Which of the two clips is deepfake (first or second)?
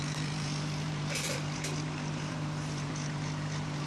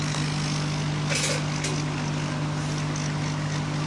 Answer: first